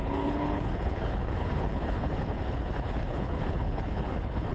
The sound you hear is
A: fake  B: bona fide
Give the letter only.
A